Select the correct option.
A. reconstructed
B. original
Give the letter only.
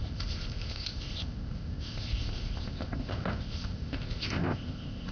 A